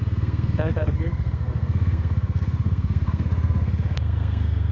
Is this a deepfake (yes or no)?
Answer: yes